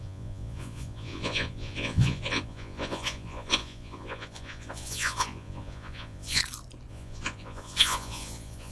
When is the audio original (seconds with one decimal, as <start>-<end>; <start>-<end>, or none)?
6.4-6.9

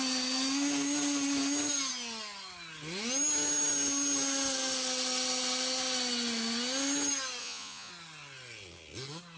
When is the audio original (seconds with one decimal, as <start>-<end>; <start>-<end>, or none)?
0.0-7.4; 7.9-9.4

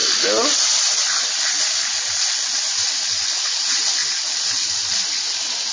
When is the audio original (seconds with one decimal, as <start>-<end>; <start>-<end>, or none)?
0.0-5.7

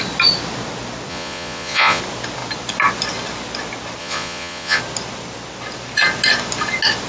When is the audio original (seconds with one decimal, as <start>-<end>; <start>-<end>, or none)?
0.0-1.1; 2.0-4.0; 4.8-7.1

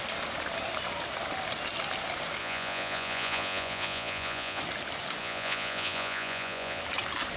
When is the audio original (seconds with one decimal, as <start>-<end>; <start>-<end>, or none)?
0.0-2.4; 4.6-5.2; 6.8-7.4